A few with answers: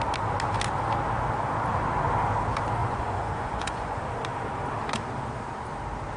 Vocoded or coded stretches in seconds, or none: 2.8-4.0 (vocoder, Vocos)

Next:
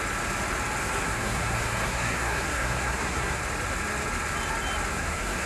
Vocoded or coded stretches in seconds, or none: 0.8-3.4 (codec, SNAC); 4.9-5.5

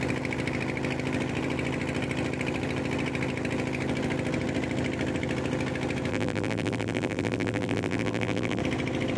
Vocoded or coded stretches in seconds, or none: 6.1-8.6 (vocoder, BigVGAN v2)

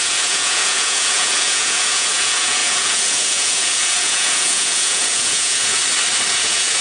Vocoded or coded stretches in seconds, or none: 0.0-5.8 (vocoder, Vocos); 6.3-6.8

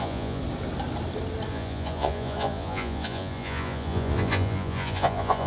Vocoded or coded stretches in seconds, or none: 0.0-0.4 (vocoder, Vocos); 1.5-5.5

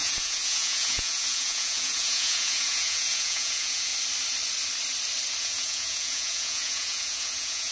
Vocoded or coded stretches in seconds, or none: 0.0-3.9 (vocoder, Vocos); 5.4-7.7